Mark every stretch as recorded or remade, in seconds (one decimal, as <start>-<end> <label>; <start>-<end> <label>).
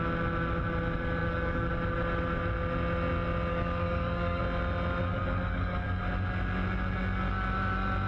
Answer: 0.0-1.2 recorded; 1.2-1.7 remade; 1.7-3.5 recorded; 3.5-4.4 remade; 4.4-5.1 recorded; 5.1-6.0 remade; 6.0-8.1 recorded